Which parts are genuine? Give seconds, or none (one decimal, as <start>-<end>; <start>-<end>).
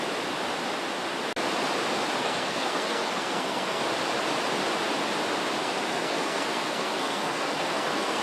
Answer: 0.0-2.2; 3.8-5.6